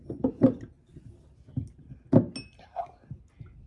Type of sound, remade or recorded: recorded